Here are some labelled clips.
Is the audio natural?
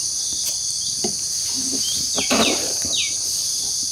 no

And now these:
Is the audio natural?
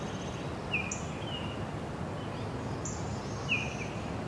yes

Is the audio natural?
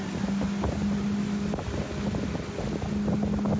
yes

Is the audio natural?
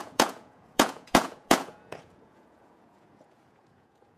no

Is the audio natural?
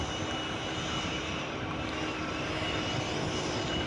yes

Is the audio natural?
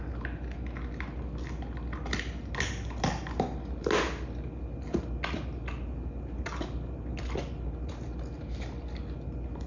yes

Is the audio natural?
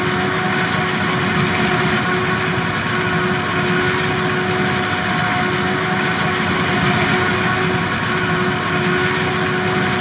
yes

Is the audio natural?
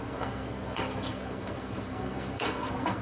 no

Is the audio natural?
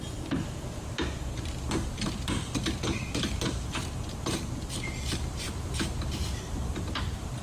no